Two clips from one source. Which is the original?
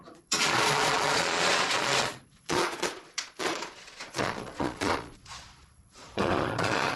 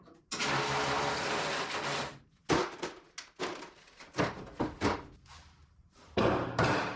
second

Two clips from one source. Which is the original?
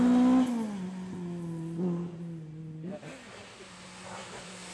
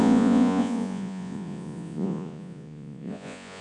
first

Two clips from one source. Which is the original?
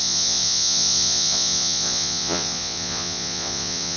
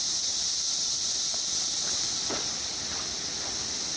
second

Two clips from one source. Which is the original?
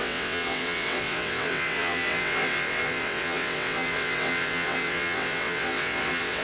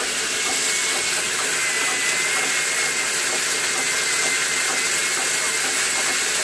second